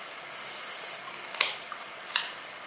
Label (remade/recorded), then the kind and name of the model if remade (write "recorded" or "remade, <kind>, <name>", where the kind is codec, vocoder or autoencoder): recorded